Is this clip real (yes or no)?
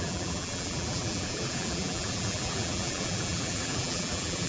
no